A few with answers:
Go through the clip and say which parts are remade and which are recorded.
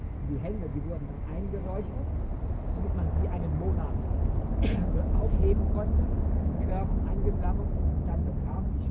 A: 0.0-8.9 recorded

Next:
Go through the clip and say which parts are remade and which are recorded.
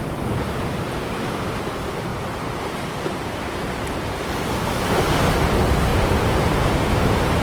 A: 0.0-5.9 recorded; 5.9-6.7 remade; 6.7-7.4 recorded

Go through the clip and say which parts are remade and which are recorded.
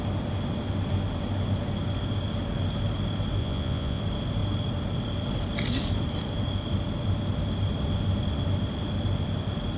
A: 0.0-3.4 recorded; 3.4-4.0 remade; 4.0-9.8 recorded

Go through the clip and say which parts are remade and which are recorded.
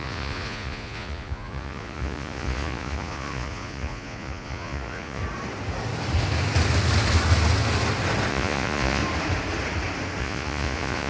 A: 0.0-5.2 remade; 5.2-8.3 recorded; 8.3-9.0 remade; 9.0-10.2 recorded; 10.2-11.1 remade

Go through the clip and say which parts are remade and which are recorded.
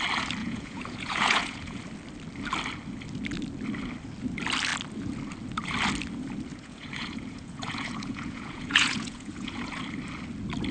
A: 0.0-0.4 recorded; 0.4-1.8 remade; 1.8-6.5 recorded; 6.5-9.8 remade; 9.8-10.7 recorded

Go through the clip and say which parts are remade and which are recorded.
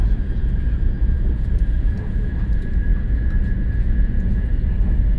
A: 0.0-5.2 remade